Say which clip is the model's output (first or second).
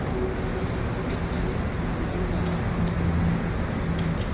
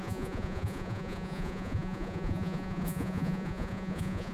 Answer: second